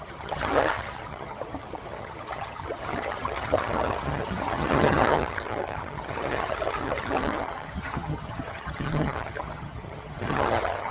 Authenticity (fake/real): fake